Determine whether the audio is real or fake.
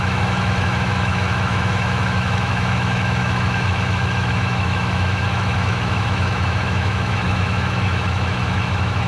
fake